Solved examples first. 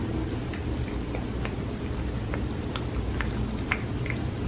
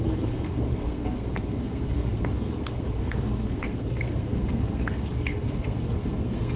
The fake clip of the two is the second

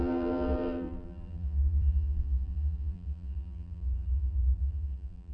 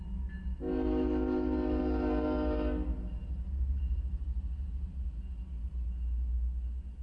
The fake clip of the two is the first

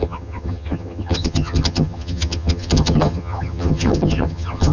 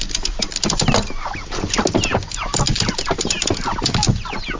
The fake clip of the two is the first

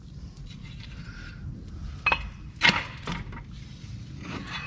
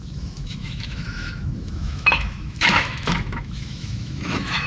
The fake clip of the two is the second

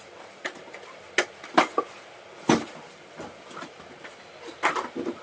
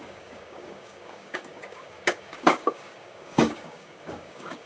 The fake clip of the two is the second